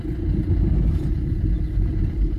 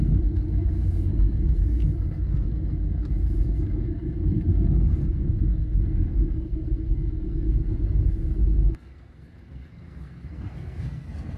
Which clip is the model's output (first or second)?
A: second